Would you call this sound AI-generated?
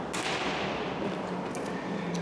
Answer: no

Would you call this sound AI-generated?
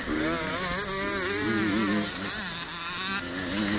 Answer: no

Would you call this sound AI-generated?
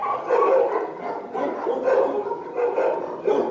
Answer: no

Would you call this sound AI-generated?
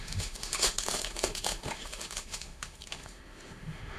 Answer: yes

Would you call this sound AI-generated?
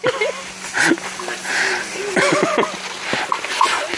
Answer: no